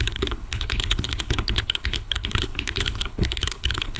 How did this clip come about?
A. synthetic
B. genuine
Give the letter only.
A